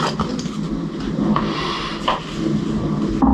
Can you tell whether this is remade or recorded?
recorded